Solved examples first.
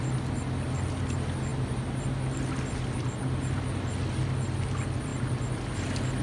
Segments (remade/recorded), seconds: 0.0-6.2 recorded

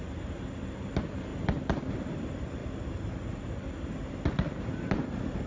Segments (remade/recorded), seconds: 0.0-5.5 recorded

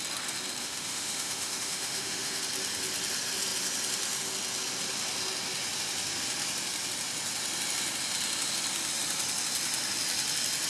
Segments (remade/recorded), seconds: 0.0-0.6 recorded; 0.6-2.4 remade; 2.4-10.7 recorded

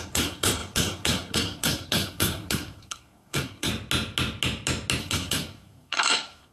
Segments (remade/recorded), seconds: 0.0-3.7 remade; 3.7-5.0 recorded; 5.0-6.5 remade

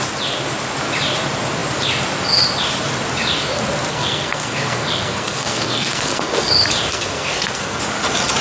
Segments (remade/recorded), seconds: 0.0-3.9 recorded; 3.9-6.5 remade; 6.5-6.9 recorded; 6.9-7.8 remade; 7.8-8.4 recorded